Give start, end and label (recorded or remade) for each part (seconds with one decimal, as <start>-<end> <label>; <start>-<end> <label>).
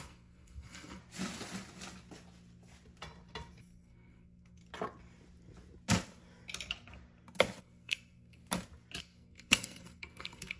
0.0-1.0 remade; 1.0-3.6 recorded; 3.6-4.6 remade; 4.6-7.6 recorded; 7.6-8.4 remade; 8.4-9.0 recorded; 9.0-10.6 remade